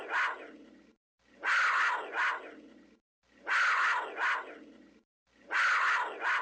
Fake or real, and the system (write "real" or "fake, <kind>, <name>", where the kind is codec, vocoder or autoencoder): real